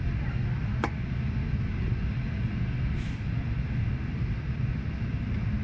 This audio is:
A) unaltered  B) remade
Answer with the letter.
A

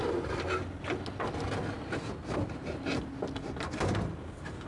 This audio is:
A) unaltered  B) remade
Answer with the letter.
A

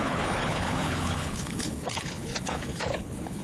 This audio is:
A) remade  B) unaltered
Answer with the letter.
A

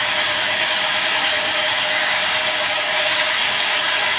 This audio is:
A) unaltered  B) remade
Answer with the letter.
B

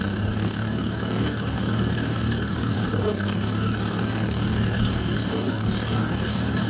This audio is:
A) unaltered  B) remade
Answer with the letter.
B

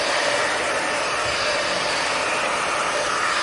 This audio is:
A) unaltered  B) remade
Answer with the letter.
A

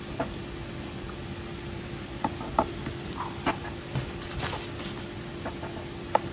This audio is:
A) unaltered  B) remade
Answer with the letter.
A